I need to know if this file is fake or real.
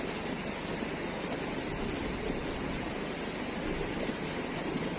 real